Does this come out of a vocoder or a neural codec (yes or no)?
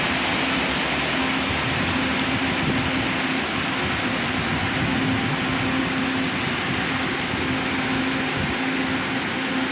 no